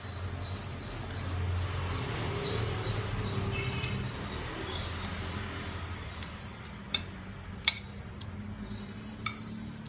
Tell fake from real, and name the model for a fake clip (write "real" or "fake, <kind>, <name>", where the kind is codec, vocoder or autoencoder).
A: real